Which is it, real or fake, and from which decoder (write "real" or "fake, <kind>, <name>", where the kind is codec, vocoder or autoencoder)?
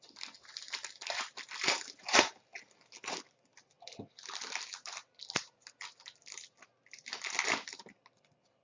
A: real